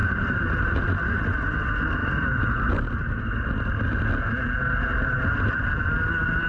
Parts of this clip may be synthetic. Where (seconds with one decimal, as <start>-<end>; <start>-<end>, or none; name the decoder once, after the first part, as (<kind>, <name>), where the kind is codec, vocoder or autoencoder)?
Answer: 0.0-0.6 (vocoder, BigVGAN v2); 2.0-2.7; 4.9-5.6